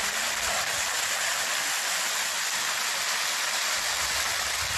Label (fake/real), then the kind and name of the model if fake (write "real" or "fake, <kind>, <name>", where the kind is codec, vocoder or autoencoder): real